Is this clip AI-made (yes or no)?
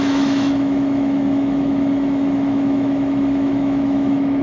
yes